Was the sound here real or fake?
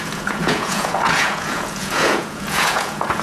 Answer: fake